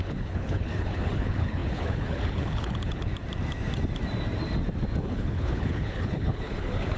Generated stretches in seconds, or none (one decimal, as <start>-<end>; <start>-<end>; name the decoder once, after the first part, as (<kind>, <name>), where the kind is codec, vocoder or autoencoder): 0.0-3.1 (codec, HILCodec); 5.0-7.0